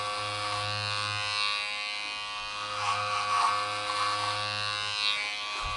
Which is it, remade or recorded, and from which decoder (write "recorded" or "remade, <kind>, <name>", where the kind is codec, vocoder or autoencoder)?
recorded